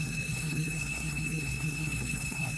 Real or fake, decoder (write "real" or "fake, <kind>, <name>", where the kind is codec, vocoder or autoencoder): fake, codec, SNAC